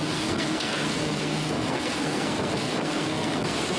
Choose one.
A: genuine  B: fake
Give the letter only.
B